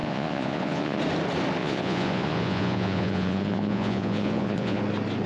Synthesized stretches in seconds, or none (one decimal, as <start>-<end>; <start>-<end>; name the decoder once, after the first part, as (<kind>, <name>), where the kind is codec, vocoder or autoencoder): 0.0-1.0 (vocoder, Vocos); 1.6-4.8